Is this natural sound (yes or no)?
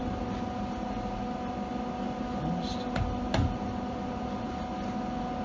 yes